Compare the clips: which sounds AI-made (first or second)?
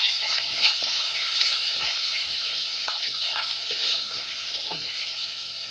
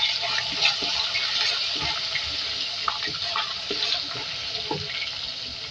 first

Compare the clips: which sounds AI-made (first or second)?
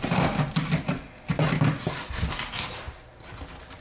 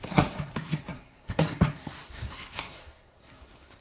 second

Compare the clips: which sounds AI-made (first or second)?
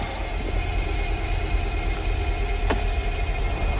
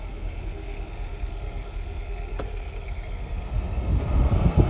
second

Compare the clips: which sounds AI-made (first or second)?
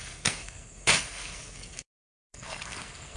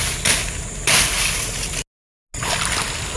first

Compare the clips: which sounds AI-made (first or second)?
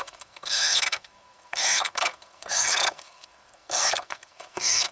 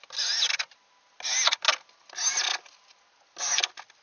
first